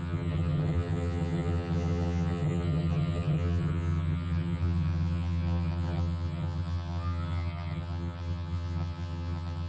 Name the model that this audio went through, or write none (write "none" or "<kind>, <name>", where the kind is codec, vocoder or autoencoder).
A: vocoder, HiFi-GAN